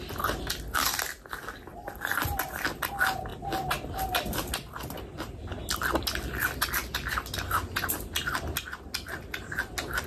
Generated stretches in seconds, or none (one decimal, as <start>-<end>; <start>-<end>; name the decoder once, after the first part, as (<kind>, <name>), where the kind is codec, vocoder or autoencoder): 1.7-2.9 (vocoder, BigVGAN v2)